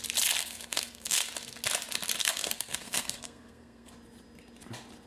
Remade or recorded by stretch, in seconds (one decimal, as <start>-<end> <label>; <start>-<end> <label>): 0.0-0.4 recorded; 0.4-1.3 remade; 1.3-2.2 recorded; 2.2-3.9 remade; 3.9-5.1 recorded

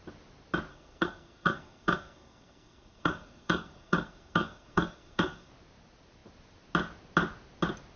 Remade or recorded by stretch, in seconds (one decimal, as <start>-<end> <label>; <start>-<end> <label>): 0.0-0.7 recorded; 0.7-5.5 remade; 5.5-8.0 recorded

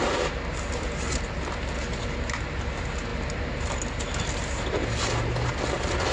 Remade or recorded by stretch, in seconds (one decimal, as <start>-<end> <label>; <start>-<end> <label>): 0.0-6.1 recorded

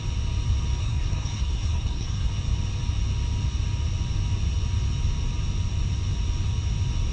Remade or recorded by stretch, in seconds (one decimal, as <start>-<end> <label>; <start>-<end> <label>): 0.0-0.8 recorded; 0.8-2.3 remade; 2.3-7.1 recorded

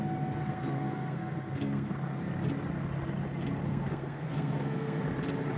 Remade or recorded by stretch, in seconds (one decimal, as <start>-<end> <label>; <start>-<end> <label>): 0.0-0.4 recorded; 0.4-1.9 remade; 1.9-3.7 recorded; 3.7-5.0 remade; 5.0-5.6 recorded